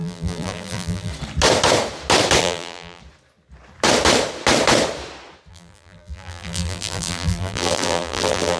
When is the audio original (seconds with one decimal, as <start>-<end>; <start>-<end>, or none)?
1.1-2.4; 3.0-5.5